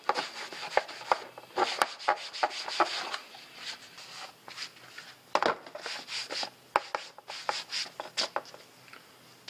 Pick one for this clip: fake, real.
real